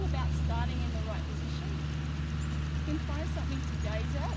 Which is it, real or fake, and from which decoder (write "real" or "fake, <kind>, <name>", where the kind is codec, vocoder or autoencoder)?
real